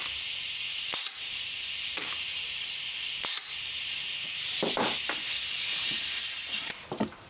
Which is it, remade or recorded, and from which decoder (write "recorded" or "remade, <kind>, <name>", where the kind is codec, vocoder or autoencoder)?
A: remade, vocoder, BigVGAN v2